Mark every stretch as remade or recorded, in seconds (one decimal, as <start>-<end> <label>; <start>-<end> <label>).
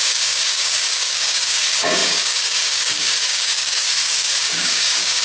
0.0-5.2 remade